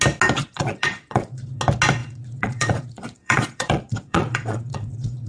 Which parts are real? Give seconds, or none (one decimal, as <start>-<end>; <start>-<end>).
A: 0.0-0.4; 1.6-2.0

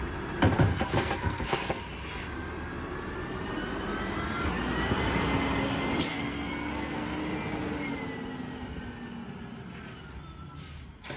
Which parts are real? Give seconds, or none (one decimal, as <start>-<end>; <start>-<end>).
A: 0.0-0.7; 1.8-6.1; 7.2-11.2

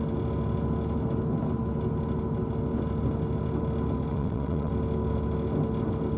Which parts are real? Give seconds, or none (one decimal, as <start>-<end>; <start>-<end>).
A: 0.0-4.1; 4.7-6.2

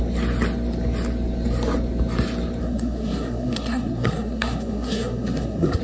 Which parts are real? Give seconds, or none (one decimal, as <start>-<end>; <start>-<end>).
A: 0.0-2.6